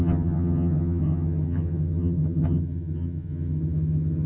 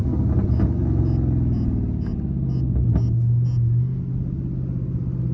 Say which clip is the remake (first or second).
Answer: first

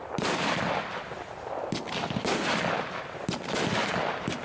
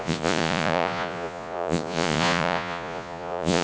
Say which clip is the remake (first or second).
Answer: second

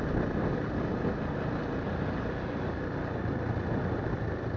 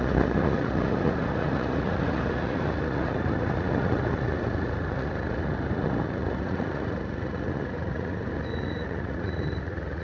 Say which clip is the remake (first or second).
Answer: second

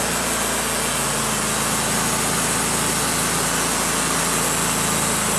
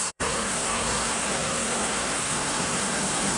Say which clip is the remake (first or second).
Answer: second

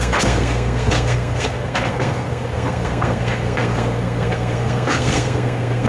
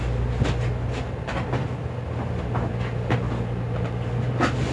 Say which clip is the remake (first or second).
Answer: first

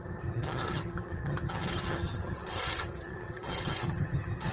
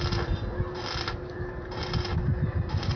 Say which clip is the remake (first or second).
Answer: first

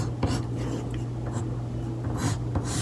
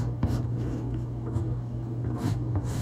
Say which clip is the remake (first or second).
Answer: second